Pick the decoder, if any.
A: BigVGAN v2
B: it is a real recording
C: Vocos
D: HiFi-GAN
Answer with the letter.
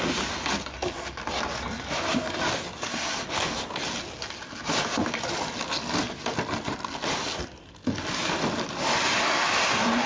B